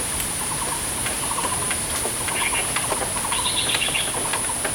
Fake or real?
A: real